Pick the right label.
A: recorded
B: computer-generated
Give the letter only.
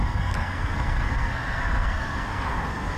B